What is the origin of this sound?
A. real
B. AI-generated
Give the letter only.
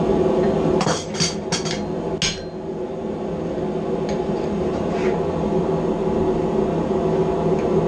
A